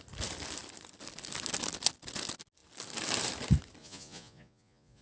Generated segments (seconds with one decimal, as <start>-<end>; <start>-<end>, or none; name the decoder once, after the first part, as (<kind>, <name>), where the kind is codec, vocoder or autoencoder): 3.8-5.0 (vocoder, Vocos)